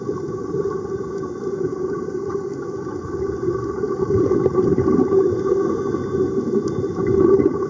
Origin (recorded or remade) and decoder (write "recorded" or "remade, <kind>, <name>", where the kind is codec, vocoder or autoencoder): recorded